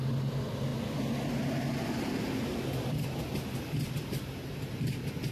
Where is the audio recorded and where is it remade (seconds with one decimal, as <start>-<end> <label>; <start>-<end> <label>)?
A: 0.0-5.3 recorded